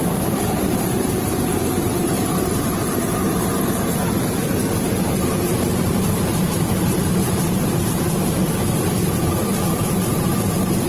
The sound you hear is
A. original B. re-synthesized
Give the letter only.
B